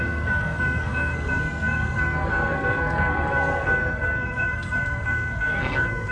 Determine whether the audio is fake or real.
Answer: fake